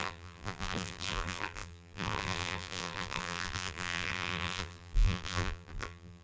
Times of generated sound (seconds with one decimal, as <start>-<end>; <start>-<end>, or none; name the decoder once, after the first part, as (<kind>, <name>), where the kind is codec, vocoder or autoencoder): 0.0-6.2 (vocoder, BigVGAN v2)